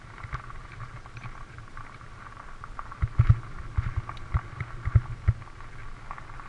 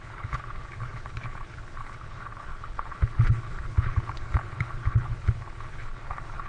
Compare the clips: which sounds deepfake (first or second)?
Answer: second